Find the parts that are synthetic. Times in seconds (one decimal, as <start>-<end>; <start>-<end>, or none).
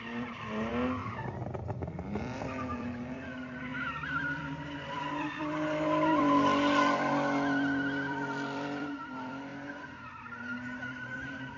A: 0.0-0.7; 1.8-9.5; 10.9-11.6